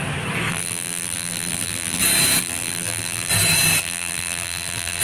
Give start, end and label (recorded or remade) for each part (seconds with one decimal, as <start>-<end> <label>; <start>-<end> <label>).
0.0-0.5 recorded; 0.5-2.0 remade; 2.0-2.4 recorded; 2.4-3.3 remade; 3.3-3.8 recorded; 3.8-5.0 remade